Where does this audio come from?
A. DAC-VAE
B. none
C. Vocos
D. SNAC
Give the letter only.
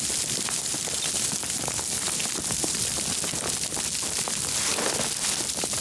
B